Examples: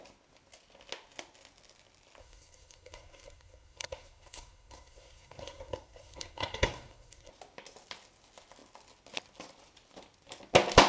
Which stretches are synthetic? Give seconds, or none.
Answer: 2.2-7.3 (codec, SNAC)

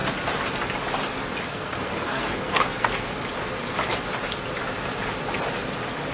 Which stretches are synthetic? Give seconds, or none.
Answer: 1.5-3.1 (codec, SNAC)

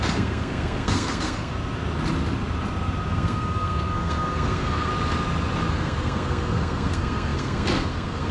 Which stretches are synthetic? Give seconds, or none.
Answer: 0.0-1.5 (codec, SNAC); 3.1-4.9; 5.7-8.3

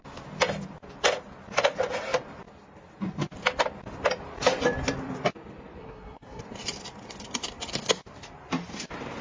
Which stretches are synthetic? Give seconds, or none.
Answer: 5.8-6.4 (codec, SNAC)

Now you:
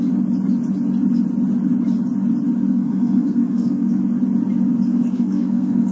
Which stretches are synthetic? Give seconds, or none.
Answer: 2.7-4.0 (codec, SNAC); 4.9-5.9

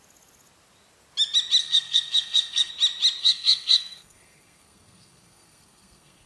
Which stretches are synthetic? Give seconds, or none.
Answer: 1.6-2.7 (codec, SNAC); 3.2-6.3